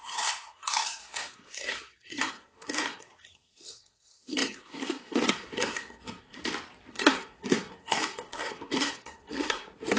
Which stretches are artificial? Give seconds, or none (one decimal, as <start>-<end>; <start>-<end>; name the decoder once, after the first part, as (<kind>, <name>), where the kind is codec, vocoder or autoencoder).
0.0-6.4 (codec, SNAC); 6.9-10.0